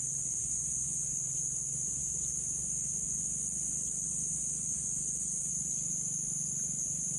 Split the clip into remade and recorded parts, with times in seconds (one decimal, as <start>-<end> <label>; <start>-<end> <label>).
0.0-0.4 recorded; 0.4-1.2 remade; 1.2-7.2 recorded